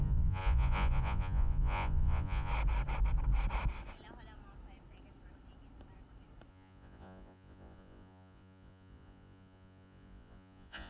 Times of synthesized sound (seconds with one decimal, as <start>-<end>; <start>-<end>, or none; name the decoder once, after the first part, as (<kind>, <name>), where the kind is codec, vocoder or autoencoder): 0.0-2.5 (vocoder, Vocos); 6.5-10.9